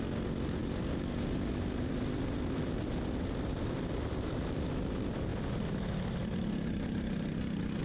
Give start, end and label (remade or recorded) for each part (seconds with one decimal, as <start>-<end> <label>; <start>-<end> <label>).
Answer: 0.0-7.8 recorded